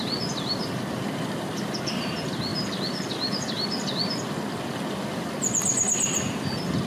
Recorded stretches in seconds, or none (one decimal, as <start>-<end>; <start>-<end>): 0.0-6.9